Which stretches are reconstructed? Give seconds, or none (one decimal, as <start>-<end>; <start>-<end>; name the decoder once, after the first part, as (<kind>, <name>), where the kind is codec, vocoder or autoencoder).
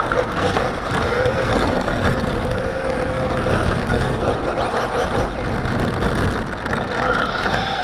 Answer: 0.0-4.3 (codec, SNAC); 6.7-7.8